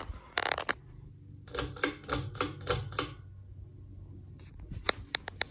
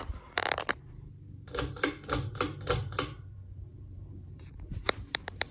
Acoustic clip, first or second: first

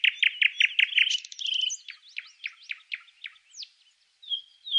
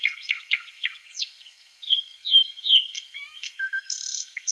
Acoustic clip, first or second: first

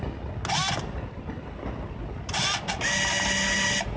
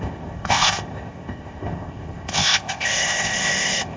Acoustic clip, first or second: first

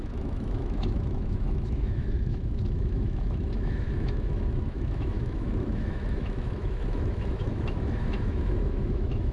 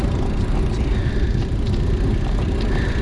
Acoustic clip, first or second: second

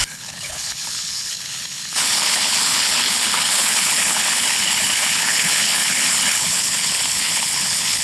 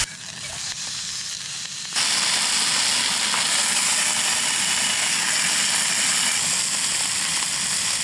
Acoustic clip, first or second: second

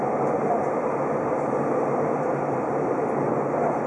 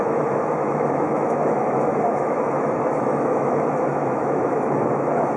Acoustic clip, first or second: first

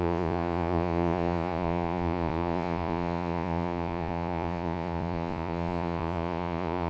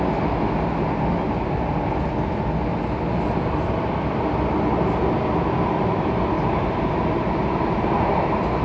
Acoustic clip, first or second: second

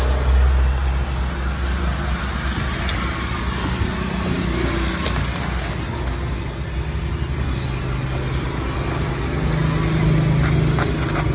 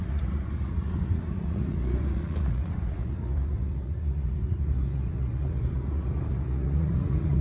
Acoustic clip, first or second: first